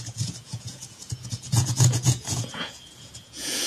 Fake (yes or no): yes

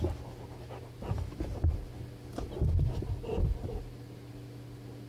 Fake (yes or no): no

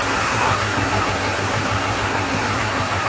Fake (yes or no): yes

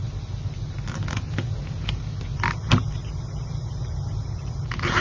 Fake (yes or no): no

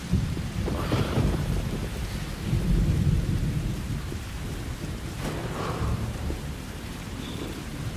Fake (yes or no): yes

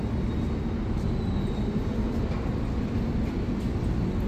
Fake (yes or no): no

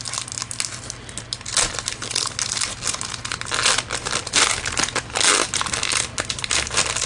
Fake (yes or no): no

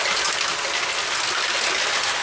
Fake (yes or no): no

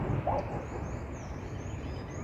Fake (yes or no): no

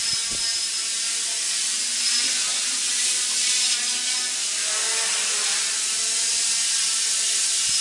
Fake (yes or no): no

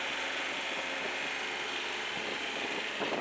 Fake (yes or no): no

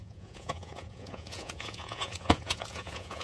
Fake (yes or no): yes